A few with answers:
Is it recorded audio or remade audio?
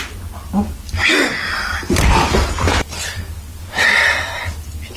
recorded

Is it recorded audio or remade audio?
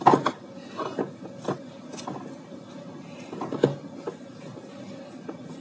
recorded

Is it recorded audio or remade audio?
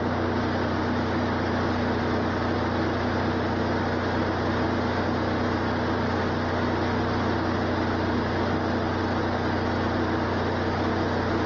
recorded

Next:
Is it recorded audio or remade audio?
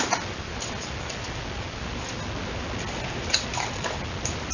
recorded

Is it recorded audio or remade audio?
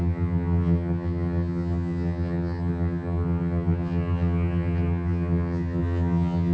remade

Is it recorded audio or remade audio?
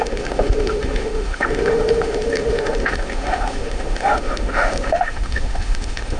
remade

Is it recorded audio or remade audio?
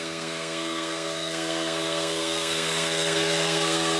remade